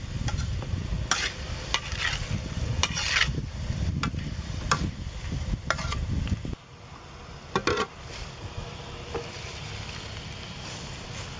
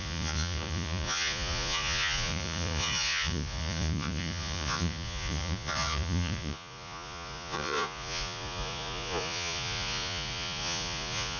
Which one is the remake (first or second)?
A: second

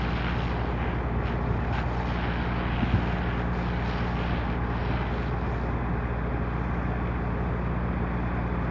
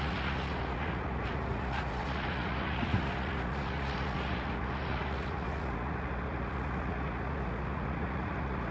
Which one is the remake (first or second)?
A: second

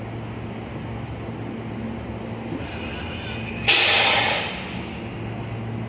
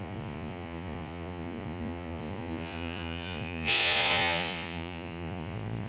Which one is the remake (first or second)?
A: second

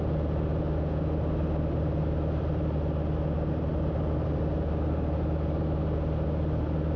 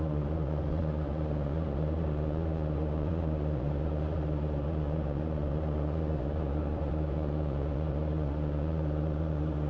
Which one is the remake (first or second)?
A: second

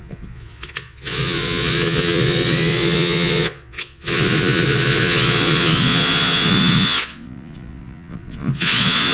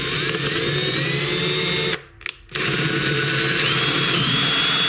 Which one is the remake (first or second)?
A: first